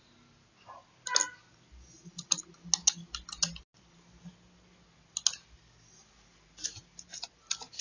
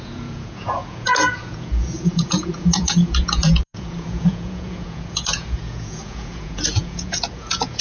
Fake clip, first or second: second